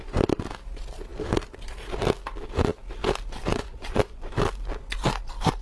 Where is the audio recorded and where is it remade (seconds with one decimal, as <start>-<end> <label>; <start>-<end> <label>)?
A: 0.0-3.5 recorded; 3.5-4.3 remade; 4.3-5.6 recorded